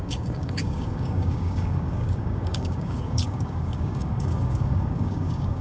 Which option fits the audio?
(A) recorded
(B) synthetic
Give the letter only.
B